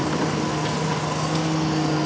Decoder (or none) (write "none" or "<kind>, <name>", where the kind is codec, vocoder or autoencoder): none